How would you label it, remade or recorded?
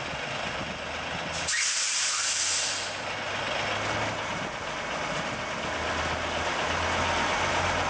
recorded